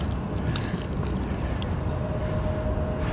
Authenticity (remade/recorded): recorded